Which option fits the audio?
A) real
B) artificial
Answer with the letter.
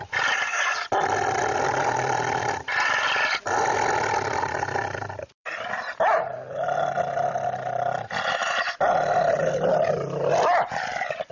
A